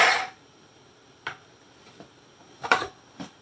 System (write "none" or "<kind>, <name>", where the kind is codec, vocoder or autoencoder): vocoder, BigVGAN v2